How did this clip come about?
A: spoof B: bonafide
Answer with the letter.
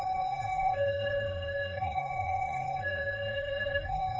A